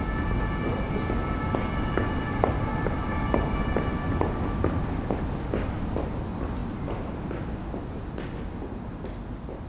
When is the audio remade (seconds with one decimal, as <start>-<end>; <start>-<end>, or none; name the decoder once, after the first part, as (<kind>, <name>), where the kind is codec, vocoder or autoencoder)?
none